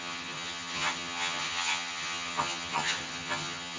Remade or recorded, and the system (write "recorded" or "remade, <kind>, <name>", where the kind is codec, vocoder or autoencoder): remade, vocoder, HiFi-GAN